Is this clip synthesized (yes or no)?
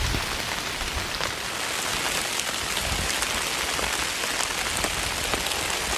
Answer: no